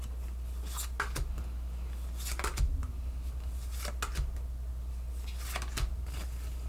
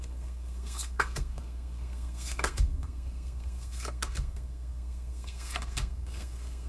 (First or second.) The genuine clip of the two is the first